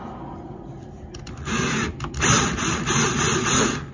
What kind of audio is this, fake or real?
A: real